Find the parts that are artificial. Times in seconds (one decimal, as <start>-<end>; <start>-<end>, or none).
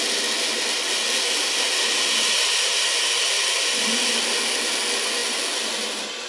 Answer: none